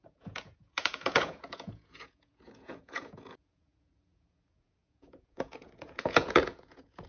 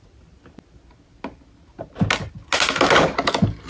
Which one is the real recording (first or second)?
second